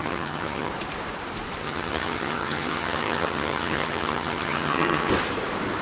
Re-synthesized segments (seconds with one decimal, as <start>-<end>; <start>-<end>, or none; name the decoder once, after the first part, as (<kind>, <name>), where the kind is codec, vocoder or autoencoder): 0.0-0.7 (vocoder, HiFi-GAN); 1.6-5.1